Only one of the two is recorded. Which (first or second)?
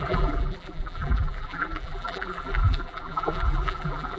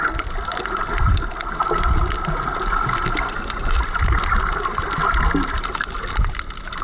second